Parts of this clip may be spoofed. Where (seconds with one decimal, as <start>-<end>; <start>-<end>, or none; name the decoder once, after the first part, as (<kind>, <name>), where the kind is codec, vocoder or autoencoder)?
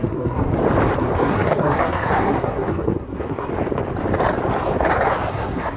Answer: 0.0-0.5 (codec, SNAC); 1.0-3.5; 5.3-5.8